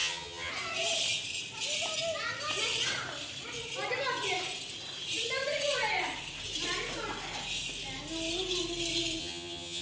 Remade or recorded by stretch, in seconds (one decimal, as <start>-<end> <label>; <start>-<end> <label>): 0.0-0.5 remade; 0.5-9.2 recorded; 9.2-9.8 remade